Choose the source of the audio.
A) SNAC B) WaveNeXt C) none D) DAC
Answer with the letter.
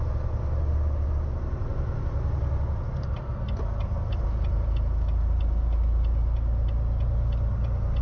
C